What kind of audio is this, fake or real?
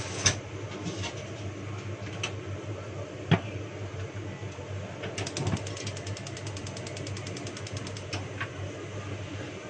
real